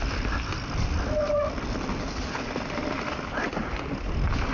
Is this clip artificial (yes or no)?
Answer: no